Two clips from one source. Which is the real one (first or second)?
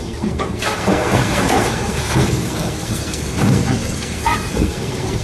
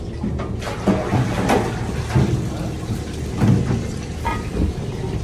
second